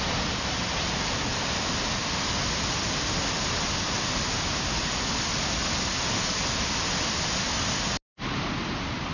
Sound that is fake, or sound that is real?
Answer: real